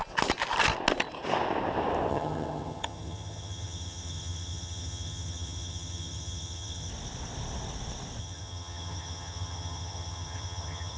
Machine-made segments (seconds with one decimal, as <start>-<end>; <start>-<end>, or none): 2.1-6.9; 8.2-11.0